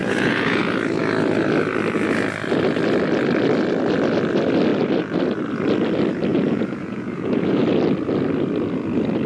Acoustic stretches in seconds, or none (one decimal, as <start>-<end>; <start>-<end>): 0.6-6.3; 7.6-9.3